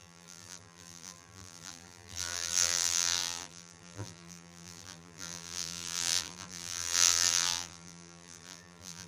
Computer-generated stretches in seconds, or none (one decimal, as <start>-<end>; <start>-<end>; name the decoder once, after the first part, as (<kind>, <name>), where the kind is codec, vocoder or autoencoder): 0.0-9.1 (vocoder, BigVGAN v2)